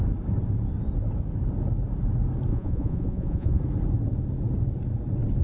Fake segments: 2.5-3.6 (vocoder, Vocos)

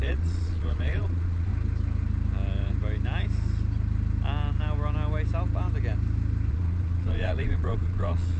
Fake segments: 0.0-1.5 (vocoder, Vocos); 6.5-8.4

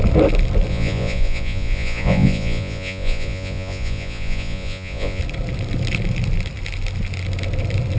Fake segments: 0.7-5.2 (vocoder, Vocos)

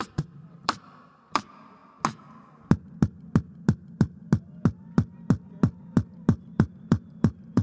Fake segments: 0.0-1.8 (vocoder, BigVGAN v2); 6.4-7.6

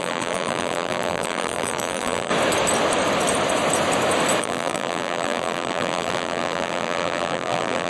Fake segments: 0.0-2.3 (vocoder, BigVGAN v2); 4.4-7.9

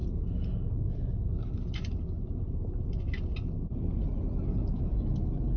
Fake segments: none

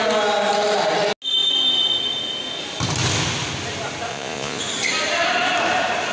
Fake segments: 4.1-4.6 (vocoder, Vocos)